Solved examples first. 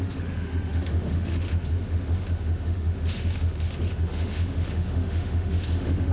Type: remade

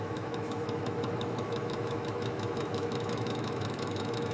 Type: remade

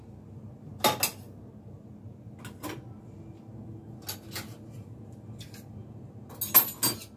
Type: recorded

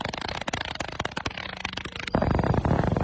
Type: recorded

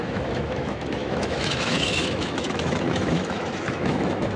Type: remade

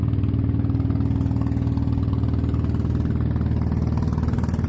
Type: recorded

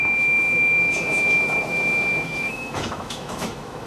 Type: remade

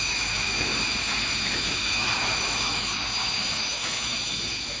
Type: remade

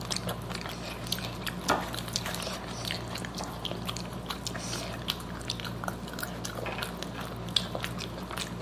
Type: recorded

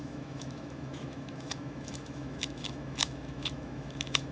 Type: remade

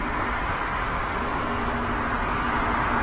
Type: recorded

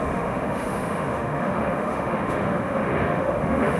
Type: remade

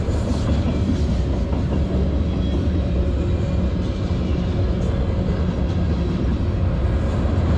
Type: recorded